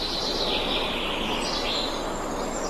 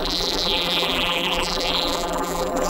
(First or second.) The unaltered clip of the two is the first